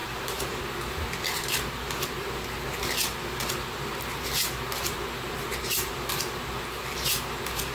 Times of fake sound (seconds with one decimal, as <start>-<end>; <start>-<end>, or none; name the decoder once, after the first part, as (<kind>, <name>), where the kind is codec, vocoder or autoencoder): 0.0-0.6 (vocoder, BigVGAN v2)